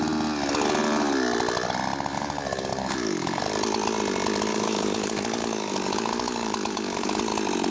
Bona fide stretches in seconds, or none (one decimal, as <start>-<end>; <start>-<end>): 0.0-2.1; 3.4-4.5; 7.2-7.7